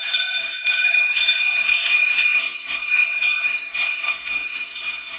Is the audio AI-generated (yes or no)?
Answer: yes